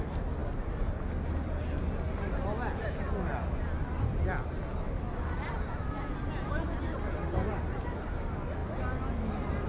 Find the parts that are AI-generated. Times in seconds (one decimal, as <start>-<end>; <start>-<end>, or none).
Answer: none